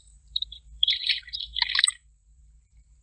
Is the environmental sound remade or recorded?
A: remade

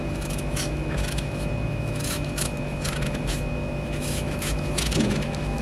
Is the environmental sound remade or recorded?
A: remade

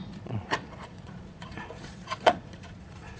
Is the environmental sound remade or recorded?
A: remade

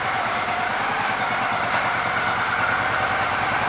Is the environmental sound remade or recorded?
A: recorded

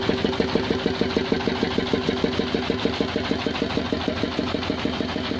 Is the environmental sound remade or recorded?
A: recorded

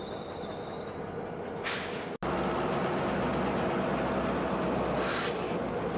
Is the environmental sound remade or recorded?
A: recorded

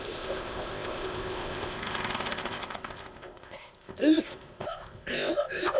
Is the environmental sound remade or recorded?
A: remade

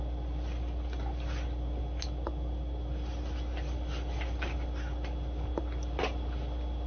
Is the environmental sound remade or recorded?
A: recorded